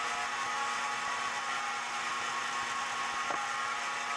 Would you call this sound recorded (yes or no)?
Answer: yes